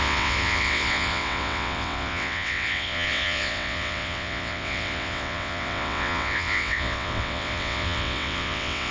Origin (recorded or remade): remade